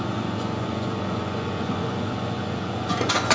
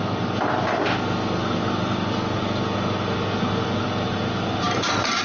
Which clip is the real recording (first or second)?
second